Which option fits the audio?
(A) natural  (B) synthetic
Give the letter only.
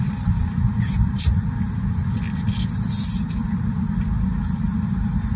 A